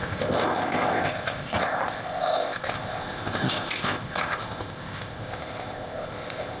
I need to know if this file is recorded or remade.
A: remade